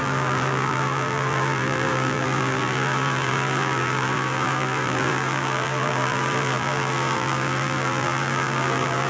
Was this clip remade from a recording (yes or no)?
yes